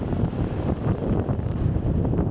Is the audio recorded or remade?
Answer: recorded